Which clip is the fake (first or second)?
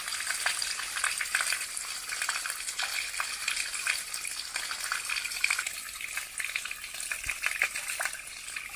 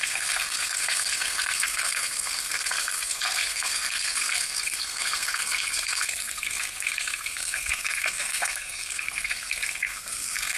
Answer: second